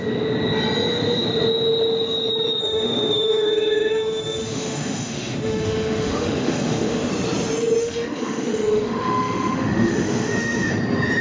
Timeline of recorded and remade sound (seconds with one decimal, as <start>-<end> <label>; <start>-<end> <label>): 0.0-2.6 recorded; 2.6-7.1 remade; 7.1-7.8 recorded; 7.8-10.7 remade; 10.7-11.2 recorded

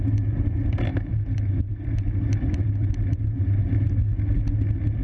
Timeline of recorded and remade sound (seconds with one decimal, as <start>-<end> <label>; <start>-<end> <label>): 0.0-0.9 recorded; 0.9-3.9 remade; 3.9-5.0 recorded

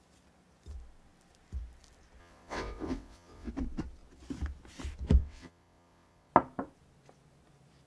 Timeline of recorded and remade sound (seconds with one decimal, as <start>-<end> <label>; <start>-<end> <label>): 0.0-2.2 recorded; 2.2-3.5 remade; 3.5-5.2 recorded; 5.2-6.3 remade; 6.3-7.9 recorded